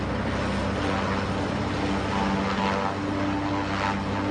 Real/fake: real